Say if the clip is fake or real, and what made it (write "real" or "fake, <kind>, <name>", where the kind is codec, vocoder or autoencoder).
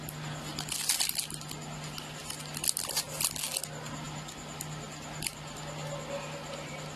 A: real